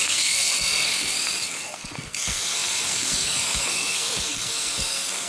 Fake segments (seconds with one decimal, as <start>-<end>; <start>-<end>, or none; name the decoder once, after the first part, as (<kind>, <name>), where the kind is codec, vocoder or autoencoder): 0.0-5.3 (codec, SNAC)